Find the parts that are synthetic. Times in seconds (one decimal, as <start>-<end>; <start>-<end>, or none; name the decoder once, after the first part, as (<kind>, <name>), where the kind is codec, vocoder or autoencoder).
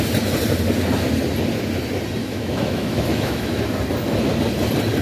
2.2-3.6 (autoencoder, DAC-VAE)